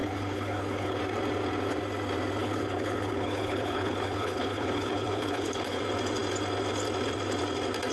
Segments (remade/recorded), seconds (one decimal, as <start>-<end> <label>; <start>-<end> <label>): 0.0-1.0 remade; 1.0-2.4 recorded; 2.4-5.8 remade; 5.8-7.9 recorded